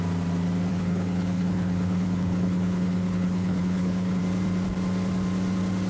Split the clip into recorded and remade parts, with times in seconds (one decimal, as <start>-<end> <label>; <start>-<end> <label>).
0.0-0.7 recorded; 0.7-4.2 remade; 4.2-5.9 recorded